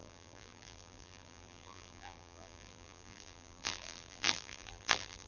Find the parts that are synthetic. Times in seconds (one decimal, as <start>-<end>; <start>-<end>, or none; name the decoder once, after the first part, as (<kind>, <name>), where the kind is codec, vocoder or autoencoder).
0.0-5.3 (vocoder, BigVGAN v2)